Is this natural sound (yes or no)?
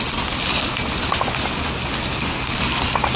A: yes